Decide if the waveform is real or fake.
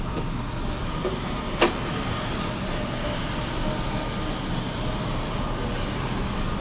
real